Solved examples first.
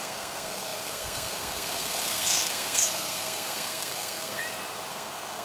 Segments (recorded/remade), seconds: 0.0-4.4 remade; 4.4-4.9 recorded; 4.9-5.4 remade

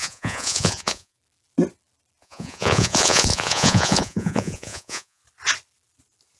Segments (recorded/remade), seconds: 0.0-1.2 remade; 1.2-2.2 recorded; 2.2-5.2 remade; 5.2-6.4 recorded

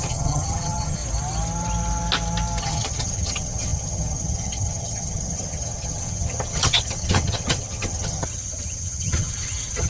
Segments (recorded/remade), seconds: 0.0-1.0 remade; 1.0-2.6 recorded; 2.6-9.9 remade

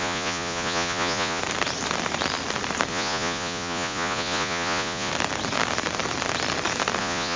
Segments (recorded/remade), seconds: 0.0-1.4 remade; 1.4-2.9 recorded; 2.9-5.1 remade; 5.1-7.0 recorded; 7.0-7.4 remade

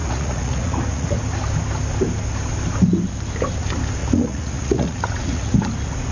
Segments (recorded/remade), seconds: 0.0-1.2 remade; 1.2-4.0 recorded; 4.0-5.6 remade; 5.6-6.1 recorded